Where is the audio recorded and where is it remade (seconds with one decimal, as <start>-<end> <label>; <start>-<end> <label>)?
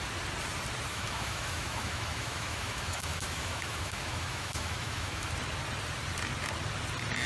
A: 0.0-0.9 recorded; 0.9-5.3 remade; 5.3-7.3 recorded